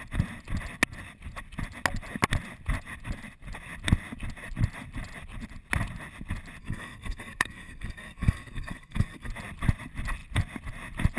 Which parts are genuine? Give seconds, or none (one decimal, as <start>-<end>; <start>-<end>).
0.0-6.6; 9.3-11.2